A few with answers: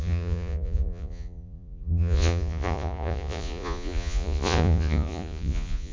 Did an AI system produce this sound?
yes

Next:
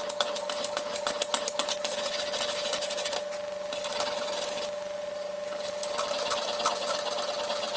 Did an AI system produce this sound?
no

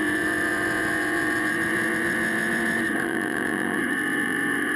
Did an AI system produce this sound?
yes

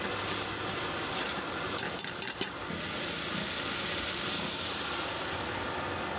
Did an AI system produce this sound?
no